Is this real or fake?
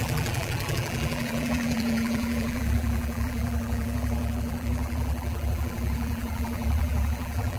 fake